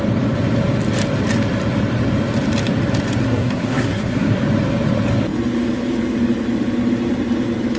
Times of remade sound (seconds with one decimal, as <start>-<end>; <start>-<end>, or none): 3.2-4.4